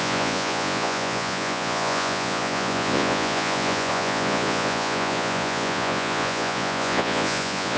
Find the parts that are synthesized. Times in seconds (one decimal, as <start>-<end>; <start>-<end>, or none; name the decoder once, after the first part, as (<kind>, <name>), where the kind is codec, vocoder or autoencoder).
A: 0.0-7.8 (vocoder, Vocos)